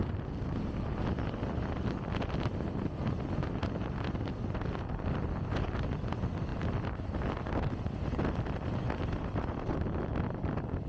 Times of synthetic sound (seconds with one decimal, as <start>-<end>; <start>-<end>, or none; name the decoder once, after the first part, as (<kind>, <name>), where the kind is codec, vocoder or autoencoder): none